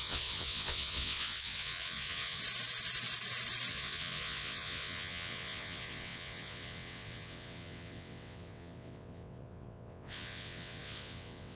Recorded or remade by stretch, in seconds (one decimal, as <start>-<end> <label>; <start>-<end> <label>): 0.0-2.4 remade; 2.4-3.7 recorded; 3.7-11.6 remade